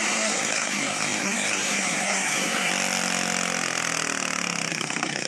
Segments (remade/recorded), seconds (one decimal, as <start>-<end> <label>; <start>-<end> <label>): 0.0-2.7 remade; 2.7-4.7 recorded; 4.7-5.3 remade